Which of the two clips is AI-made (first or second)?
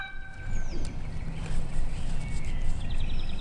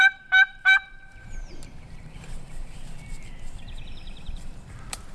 second